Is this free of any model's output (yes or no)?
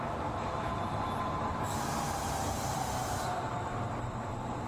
no